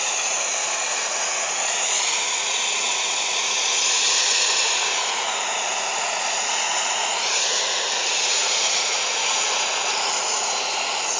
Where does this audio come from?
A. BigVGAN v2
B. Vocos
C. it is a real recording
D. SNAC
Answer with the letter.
B